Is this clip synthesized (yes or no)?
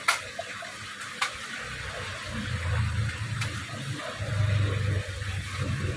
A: no